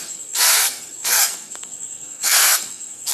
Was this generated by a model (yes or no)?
yes